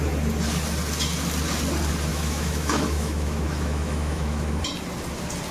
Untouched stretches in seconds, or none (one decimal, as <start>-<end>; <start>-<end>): 0.0-2.1; 4.6-5.5